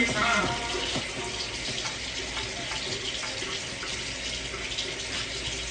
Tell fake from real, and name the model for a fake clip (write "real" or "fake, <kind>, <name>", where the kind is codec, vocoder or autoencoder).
fake, vocoder, BigVGAN v2